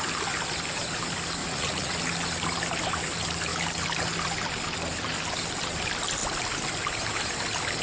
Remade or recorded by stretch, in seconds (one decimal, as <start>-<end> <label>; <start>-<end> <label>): 0.0-1.4 recorded; 1.4-2.0 remade; 2.0-7.8 recorded